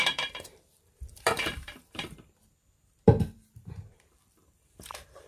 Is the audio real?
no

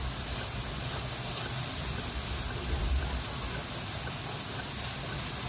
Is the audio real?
yes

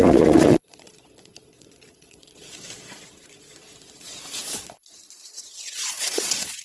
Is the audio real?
no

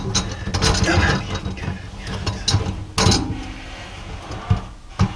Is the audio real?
yes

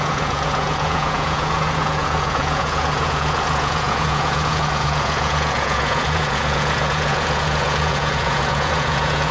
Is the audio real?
no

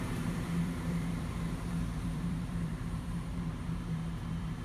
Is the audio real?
no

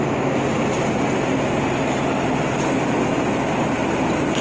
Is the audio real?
yes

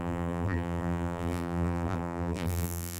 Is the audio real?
no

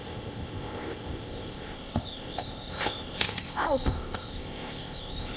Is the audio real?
no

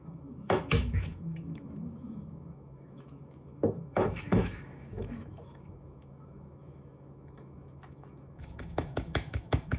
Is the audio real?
no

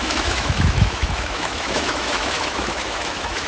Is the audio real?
no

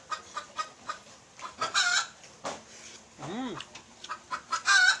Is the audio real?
yes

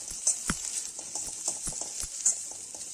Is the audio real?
yes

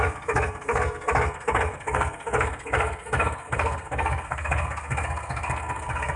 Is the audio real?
no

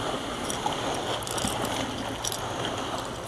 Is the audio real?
yes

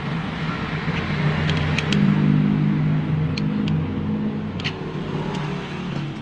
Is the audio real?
yes